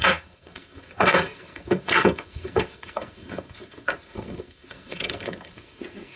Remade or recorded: remade